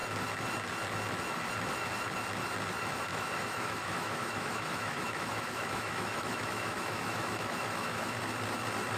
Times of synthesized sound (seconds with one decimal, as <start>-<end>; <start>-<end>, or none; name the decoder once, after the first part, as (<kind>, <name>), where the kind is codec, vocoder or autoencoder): 3.1-8.2 (autoencoder, DAC-VAE)